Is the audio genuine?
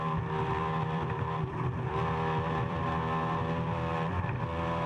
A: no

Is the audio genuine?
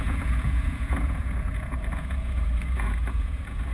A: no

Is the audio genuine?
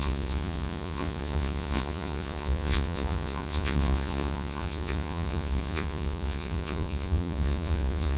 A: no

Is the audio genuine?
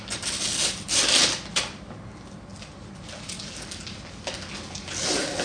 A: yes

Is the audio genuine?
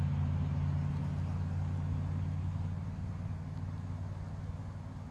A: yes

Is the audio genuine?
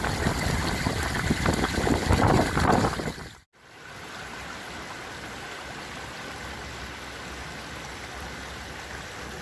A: yes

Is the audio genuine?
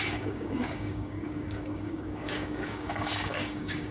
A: no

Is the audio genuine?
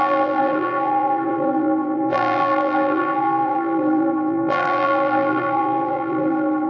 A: no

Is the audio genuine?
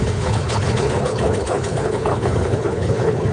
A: no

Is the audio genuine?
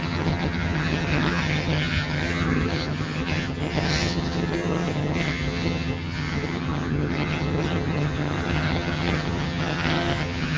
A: no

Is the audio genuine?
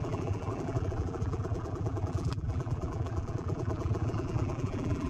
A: no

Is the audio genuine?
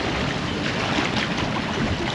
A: yes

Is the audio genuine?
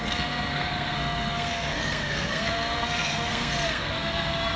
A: no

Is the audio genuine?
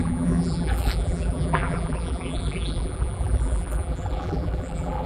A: no